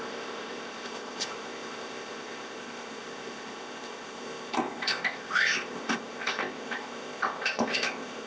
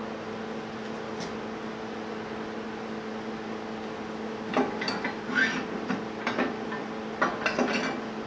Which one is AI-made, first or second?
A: first